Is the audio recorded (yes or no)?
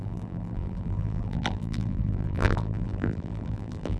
no